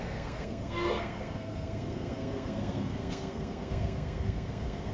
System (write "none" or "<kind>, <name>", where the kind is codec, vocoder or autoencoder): codec, SNAC